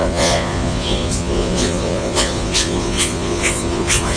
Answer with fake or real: fake